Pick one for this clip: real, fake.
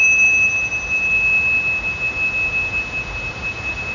real